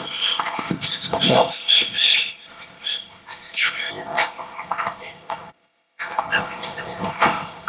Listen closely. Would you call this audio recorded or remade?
remade